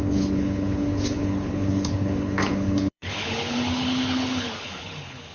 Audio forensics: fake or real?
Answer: fake